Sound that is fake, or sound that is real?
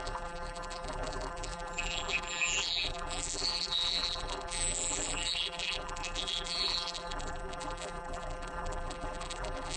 fake